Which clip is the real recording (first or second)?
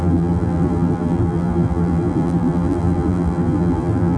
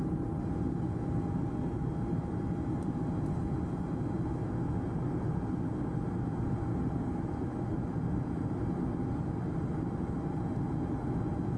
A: second